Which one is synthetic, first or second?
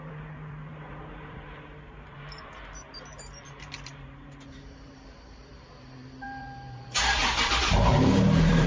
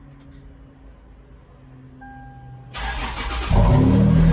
first